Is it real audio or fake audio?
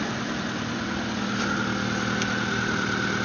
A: real